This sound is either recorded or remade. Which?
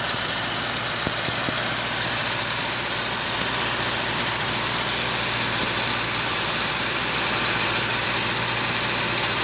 remade